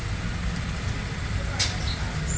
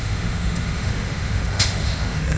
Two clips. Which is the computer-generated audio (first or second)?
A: second